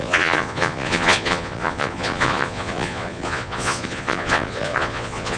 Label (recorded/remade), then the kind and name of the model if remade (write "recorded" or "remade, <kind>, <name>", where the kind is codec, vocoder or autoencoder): remade, vocoder, Vocos